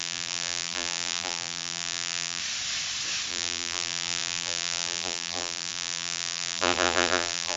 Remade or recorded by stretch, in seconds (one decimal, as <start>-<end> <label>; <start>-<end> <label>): 0.0-2.4 remade; 2.4-3.3 recorded; 3.3-7.6 remade